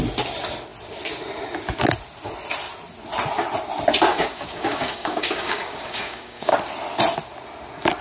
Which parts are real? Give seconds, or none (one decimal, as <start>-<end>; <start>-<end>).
0.0-4.1; 6.5-8.0